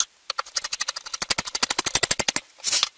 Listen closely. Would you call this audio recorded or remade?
recorded